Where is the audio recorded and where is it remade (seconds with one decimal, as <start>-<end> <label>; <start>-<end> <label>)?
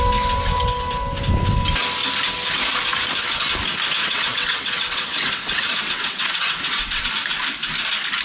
0.0-4.0 recorded; 4.0-7.1 remade; 7.1-8.2 recorded